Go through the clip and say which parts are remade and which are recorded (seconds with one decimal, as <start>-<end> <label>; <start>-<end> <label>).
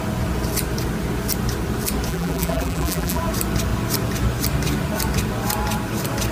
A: 0.0-2.1 recorded; 2.1-3.2 remade; 3.2-6.3 recorded